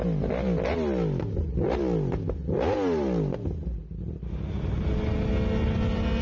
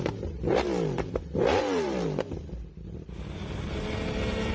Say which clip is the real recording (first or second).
first